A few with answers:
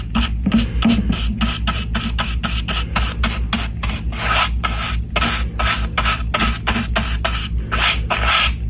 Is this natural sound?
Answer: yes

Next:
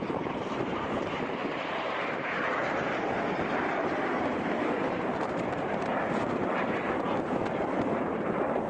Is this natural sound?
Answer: no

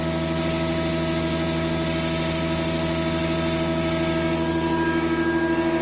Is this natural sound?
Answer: yes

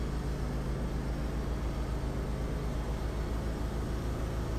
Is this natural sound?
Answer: yes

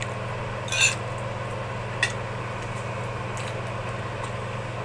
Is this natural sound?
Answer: yes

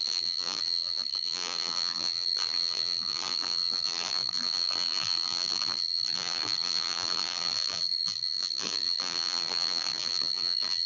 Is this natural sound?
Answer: no